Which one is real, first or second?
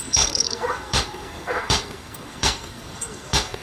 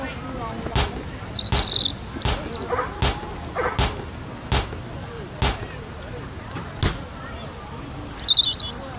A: second